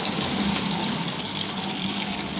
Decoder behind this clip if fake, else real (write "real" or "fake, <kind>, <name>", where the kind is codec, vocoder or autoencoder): fake, codec, DAC